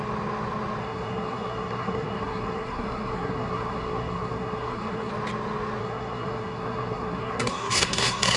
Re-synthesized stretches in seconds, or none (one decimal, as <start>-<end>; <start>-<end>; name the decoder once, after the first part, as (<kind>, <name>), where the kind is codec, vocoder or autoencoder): 0.8-5.1 (codec, SNAC); 5.8-8.4